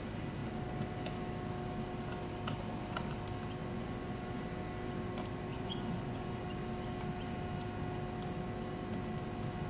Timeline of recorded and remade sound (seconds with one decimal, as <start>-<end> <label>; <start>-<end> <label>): 0.0-3.6 recorded; 3.6-4.4 remade; 4.4-5.5 recorded; 5.5-6.4 remade; 6.4-9.7 recorded